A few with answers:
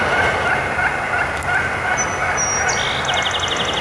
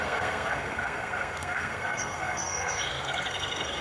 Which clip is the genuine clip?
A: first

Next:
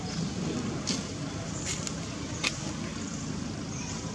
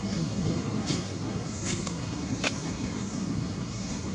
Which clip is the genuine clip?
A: first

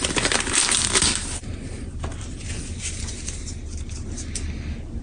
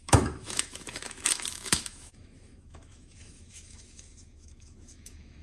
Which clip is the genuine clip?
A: first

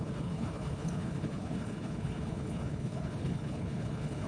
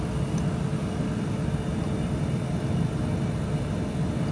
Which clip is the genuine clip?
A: second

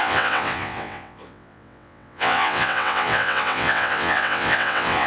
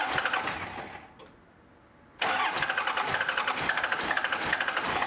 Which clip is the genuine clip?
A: second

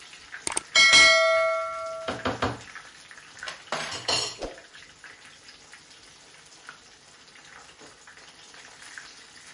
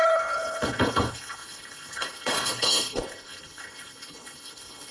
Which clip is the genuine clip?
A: first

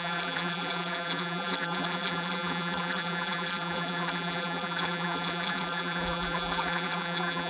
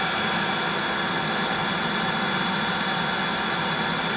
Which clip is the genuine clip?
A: second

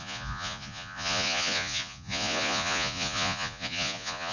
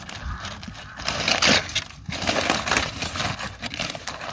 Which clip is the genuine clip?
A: second